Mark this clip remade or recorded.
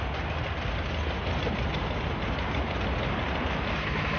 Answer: recorded